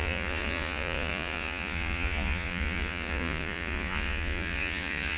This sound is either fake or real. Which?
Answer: fake